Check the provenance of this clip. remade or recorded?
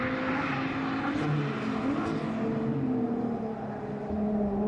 recorded